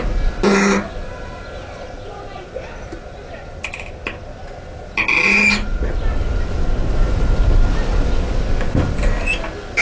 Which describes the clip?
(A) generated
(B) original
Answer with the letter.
B